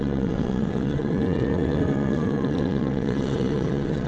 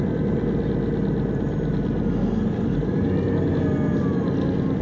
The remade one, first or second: first